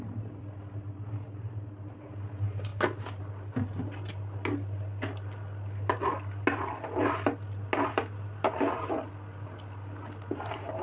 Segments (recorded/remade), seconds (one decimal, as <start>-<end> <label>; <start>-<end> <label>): 0.0-10.8 recorded